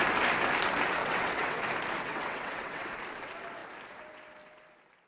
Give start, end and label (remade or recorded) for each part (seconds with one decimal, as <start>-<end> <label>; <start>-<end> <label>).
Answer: 0.0-1.0 recorded; 1.0-1.6 remade; 1.6-2.1 recorded; 2.1-2.9 remade; 2.9-5.1 recorded